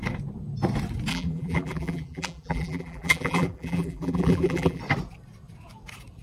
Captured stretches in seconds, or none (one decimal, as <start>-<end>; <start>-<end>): 0.0-1.1; 4.8-6.2